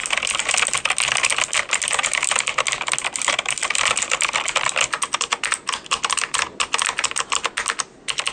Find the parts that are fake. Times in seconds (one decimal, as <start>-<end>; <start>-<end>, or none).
none